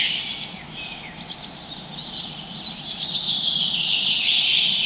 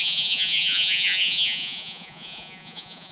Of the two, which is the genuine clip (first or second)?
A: first